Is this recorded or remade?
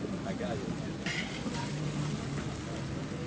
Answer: recorded